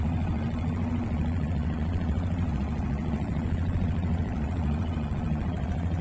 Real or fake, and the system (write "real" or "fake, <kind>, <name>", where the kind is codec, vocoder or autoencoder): fake, vocoder, Vocos